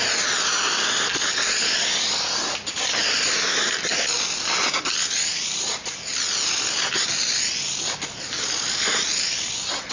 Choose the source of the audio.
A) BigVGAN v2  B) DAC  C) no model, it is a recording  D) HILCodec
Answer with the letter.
C